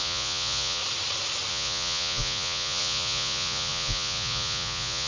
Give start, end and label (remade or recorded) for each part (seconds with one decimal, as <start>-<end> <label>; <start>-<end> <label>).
0.0-0.8 remade; 0.8-1.5 recorded; 1.5-5.1 remade